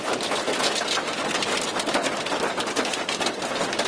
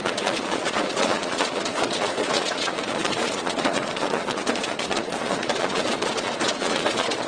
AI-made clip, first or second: second